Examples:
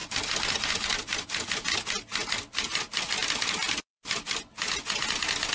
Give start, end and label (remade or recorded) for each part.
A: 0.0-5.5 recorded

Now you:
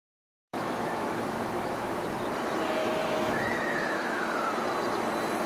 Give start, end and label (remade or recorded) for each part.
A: 0.0-1.9 remade; 1.9-2.8 recorded; 2.8-4.5 remade; 4.5-5.5 recorded

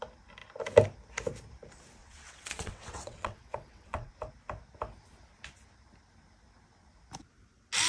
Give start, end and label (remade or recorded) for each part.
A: 0.0-2.0 recorded; 2.0-4.1 remade; 4.1-7.9 recorded